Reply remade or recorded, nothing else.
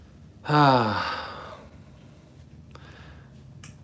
recorded